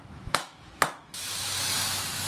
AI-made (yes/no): yes